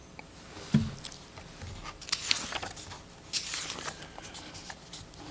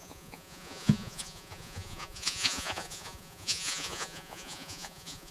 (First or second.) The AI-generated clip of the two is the second